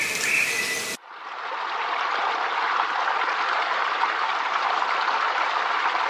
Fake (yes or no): no